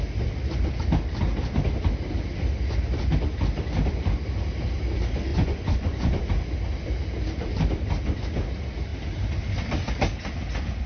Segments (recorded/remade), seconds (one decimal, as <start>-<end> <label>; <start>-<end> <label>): 0.0-5.3 recorded; 5.3-6.2 remade; 6.2-10.9 recorded